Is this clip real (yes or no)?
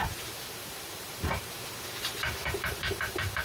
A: no